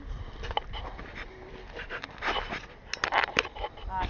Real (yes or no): yes